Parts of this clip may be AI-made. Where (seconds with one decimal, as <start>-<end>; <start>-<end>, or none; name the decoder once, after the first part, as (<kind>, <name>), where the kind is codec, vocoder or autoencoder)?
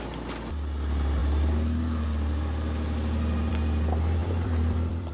4.2-5.1 (vocoder, BigVGAN v2)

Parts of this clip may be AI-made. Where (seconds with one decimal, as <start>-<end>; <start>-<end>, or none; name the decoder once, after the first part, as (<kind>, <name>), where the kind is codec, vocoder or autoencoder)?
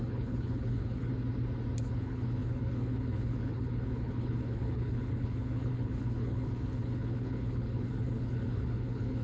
0.0-1.1 (codec, HILCodec); 1.8-9.2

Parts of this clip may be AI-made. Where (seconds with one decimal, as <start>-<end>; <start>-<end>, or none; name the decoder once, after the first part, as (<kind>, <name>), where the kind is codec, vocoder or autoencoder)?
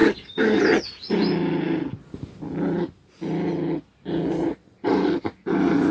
0.0-0.6 (codec, DAC)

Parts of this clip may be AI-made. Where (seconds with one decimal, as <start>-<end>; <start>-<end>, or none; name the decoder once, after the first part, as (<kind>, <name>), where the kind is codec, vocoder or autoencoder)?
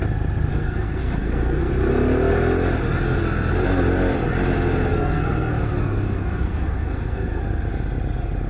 0.5-1.7 (codec, SNAC); 4.9-7.4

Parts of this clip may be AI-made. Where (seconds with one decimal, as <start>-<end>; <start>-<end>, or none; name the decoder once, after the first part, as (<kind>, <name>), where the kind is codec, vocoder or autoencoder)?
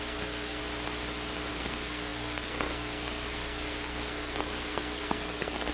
0.0-0.6 (codec, SNAC); 1.5-5.7